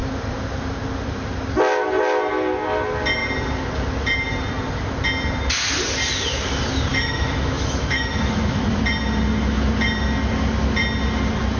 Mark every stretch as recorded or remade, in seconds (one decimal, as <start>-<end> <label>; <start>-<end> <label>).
0.0-6.9 recorded; 6.9-8.6 remade; 8.6-11.6 recorded